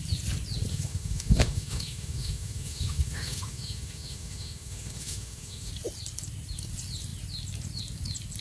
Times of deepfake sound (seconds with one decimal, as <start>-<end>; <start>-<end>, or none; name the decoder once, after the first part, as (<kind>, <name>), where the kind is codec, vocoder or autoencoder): 0.7-5.7 (autoencoder, DAC-VAE)